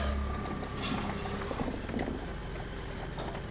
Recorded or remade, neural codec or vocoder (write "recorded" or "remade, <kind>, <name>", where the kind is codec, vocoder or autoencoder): recorded